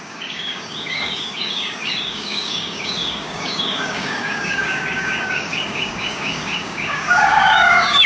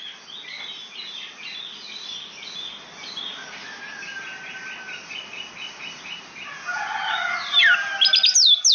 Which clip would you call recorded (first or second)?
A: second